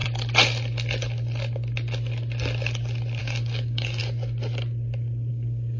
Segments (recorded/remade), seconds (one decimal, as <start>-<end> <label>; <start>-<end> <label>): 0.0-3.2 recorded; 3.2-4.0 remade; 4.0-5.3 recorded; 5.3-5.8 remade